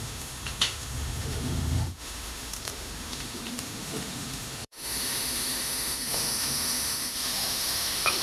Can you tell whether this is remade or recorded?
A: remade